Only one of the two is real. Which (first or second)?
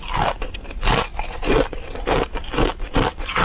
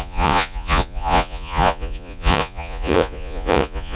first